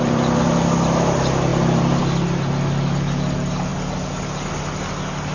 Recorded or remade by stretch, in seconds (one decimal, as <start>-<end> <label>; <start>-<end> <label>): 0.0-5.3 recorded